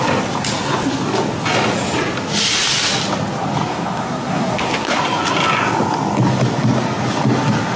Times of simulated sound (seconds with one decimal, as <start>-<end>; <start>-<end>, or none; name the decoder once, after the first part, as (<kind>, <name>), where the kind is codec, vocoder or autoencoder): 3.7-5.0 (codec, SNAC)